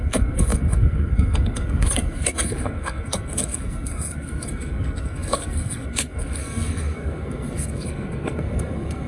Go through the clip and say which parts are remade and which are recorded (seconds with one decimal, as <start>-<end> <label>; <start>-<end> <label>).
0.0-9.1 remade